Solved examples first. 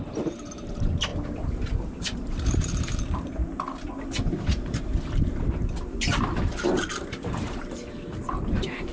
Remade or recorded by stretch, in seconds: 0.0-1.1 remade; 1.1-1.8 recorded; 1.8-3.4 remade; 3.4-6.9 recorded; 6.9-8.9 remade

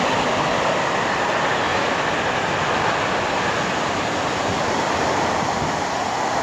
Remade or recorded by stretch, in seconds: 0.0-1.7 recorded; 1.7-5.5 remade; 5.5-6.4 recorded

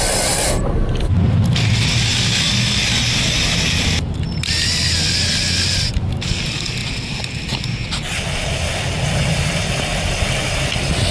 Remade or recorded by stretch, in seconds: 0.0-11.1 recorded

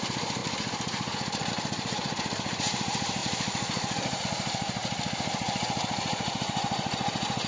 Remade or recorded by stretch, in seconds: 0.0-7.5 remade

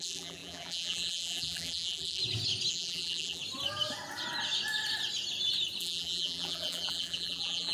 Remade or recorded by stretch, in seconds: 0.0-2.2 remade; 2.2-2.7 recorded; 2.7-3.4 remade; 3.4-5.8 recorded; 5.8-7.7 remade